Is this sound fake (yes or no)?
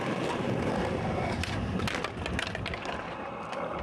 no